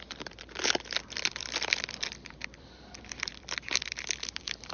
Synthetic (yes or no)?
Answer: yes